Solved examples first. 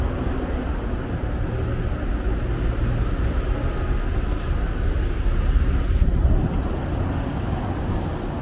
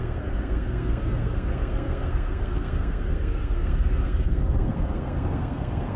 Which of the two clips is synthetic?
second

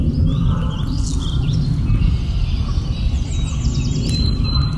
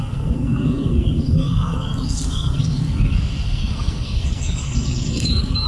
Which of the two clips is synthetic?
second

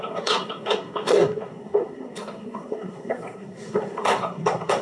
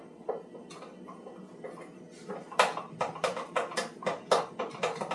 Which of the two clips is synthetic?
first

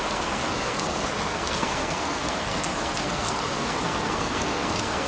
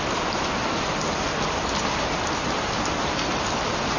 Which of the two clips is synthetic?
first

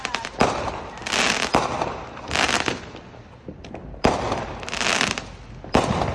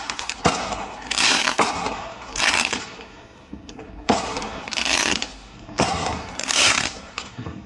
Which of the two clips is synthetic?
second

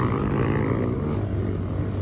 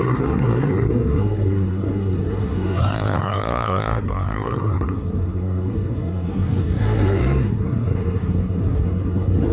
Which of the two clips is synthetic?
second